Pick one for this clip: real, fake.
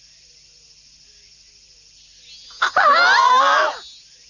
real